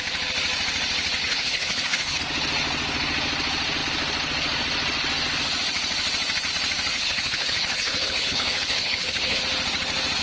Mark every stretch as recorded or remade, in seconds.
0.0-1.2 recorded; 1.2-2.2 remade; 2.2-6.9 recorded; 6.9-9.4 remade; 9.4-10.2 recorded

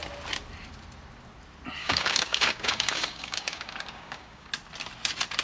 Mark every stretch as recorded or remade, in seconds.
0.0-1.8 recorded; 1.8-4.5 remade; 4.5-5.4 recorded

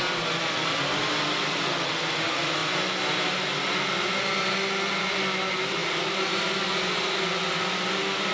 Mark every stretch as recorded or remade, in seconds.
0.0-8.3 recorded

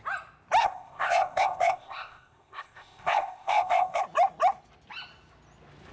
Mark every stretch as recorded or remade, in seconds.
0.0-0.6 recorded; 0.6-4.0 remade; 4.0-5.9 recorded